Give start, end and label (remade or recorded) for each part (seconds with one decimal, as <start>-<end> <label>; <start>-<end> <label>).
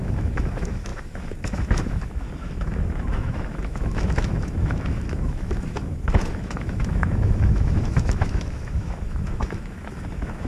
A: 0.0-10.5 remade